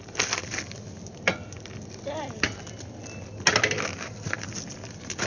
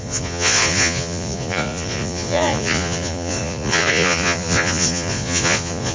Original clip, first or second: first